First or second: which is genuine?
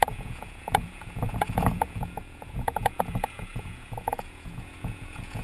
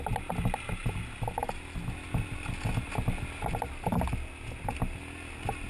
second